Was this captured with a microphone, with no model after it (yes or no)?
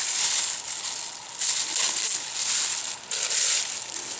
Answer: yes